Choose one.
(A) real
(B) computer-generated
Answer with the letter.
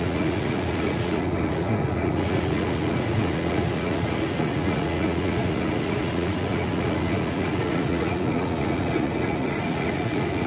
B